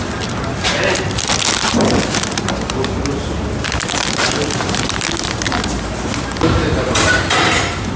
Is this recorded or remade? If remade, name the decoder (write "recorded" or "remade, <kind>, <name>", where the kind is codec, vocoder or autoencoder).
recorded